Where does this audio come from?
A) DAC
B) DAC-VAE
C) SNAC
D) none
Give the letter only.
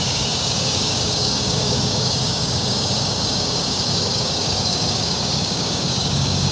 A